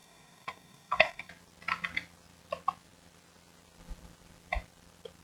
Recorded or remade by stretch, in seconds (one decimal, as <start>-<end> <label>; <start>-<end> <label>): 0.0-1.3 remade; 1.3-5.2 recorded